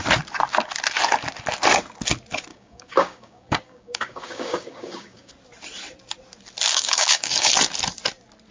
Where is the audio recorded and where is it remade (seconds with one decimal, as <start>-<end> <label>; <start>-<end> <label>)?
0.0-2.5 recorded; 2.5-5.3 remade; 5.3-6.7 recorded; 6.7-7.5 remade; 7.5-8.5 recorded